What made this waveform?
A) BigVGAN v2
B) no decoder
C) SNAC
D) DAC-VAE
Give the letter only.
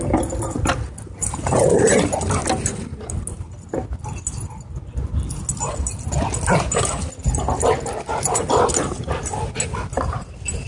B